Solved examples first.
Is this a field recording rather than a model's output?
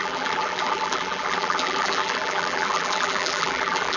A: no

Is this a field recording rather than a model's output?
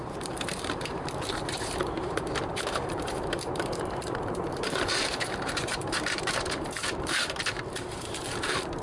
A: no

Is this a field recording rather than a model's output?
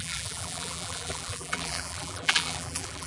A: no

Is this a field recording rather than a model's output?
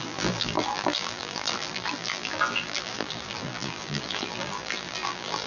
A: no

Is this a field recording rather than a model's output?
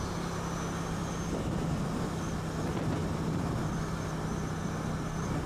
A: yes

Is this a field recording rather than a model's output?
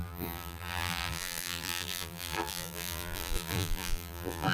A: no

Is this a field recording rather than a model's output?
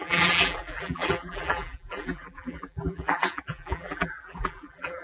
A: no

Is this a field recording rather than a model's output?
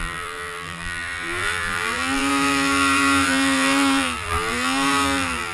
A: no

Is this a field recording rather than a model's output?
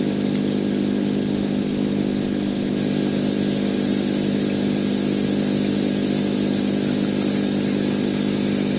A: yes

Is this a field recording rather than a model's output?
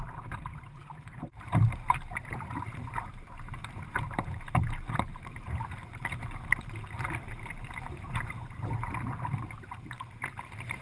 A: no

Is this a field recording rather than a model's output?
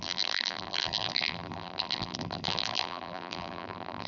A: no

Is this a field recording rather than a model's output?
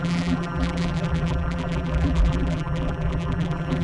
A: no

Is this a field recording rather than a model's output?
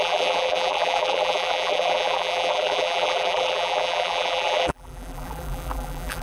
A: no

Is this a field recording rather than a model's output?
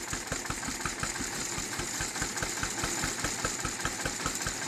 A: yes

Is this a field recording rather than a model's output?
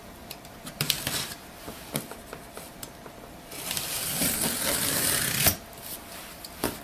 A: no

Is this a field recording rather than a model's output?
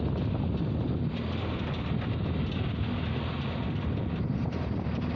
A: yes